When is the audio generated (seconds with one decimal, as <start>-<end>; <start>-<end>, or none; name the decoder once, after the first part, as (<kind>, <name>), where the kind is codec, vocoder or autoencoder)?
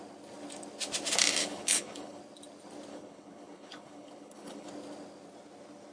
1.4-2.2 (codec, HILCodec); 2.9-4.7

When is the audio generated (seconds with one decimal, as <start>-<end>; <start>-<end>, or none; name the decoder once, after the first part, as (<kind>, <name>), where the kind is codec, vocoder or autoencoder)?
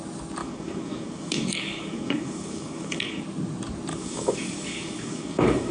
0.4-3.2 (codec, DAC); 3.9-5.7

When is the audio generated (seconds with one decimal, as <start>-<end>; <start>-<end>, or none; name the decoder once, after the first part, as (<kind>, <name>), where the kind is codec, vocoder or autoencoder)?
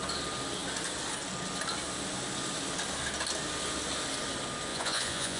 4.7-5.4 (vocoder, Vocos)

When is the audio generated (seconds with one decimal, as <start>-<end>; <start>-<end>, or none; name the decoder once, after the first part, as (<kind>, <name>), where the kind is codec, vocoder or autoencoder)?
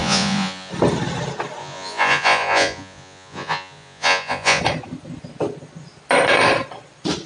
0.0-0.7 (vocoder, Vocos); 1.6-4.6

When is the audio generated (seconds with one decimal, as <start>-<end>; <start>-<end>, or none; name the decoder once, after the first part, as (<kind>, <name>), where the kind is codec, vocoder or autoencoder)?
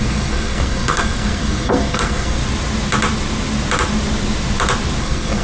0.0-2.4 (codec, SNAC); 5.0-5.4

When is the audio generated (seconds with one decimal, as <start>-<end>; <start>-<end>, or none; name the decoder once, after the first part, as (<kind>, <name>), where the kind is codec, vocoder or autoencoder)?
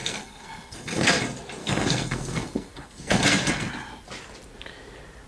0.0-1.2 (codec, SNAC); 1.6-3.7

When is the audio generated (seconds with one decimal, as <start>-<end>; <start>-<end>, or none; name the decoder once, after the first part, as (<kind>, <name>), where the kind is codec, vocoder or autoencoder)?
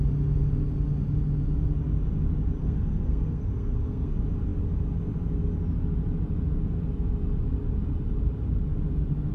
2.6-4.1 (codec, SNAC)